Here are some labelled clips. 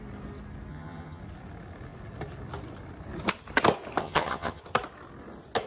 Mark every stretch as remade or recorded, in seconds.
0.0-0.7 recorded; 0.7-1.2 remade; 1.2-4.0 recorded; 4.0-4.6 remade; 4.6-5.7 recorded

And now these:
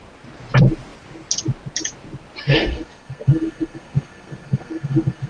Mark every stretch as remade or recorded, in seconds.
0.0-2.5 recorded; 2.5-5.3 remade

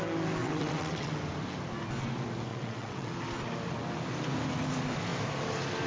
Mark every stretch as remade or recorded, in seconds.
0.0-0.4 recorded; 0.4-1.1 remade; 1.1-2.5 recorded; 2.5-3.1 remade; 3.1-5.9 recorded

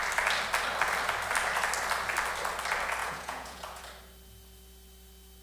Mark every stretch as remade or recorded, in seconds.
0.0-3.0 recorded; 3.0-3.8 remade; 3.8-5.4 recorded

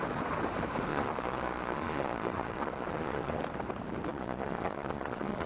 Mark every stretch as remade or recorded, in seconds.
0.0-0.9 recorded; 0.9-3.4 remade; 3.4-4.1 recorded; 4.1-5.5 remade